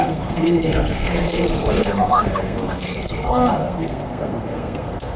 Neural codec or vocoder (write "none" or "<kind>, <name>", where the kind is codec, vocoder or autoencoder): codec, SNAC